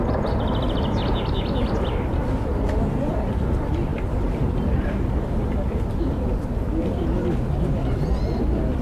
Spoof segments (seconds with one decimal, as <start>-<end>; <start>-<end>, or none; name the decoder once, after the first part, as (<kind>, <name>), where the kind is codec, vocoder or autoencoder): 3.9-6.3 (vocoder, BigVGAN v2)